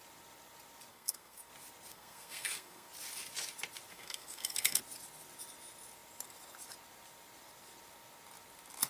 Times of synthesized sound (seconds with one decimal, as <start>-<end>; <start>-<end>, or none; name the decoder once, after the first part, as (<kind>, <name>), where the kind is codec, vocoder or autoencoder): 0.9-1.5 (codec, SNAC); 1.9-2.9; 3.9-4.8